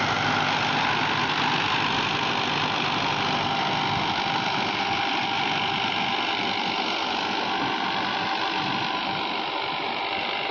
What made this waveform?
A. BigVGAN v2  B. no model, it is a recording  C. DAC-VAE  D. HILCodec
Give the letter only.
B